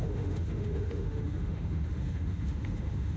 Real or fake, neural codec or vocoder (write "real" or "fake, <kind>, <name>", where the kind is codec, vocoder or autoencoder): fake, autoencoder, DAC-VAE